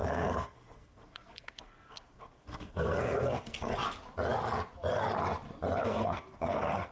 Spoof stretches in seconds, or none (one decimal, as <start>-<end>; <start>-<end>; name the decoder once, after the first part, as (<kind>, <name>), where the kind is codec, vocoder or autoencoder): 0.0-3.7 (codec, SNAC); 5.8-6.9